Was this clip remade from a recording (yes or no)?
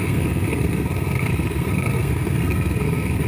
yes